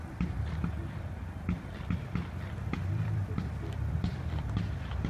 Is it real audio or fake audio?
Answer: fake